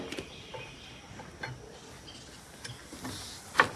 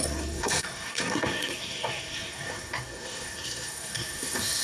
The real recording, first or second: first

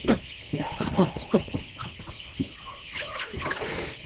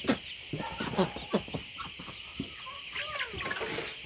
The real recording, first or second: second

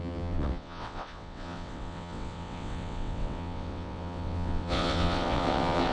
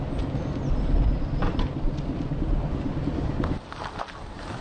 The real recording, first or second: second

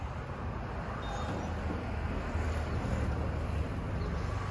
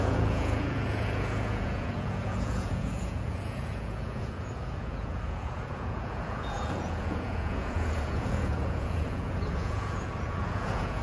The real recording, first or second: first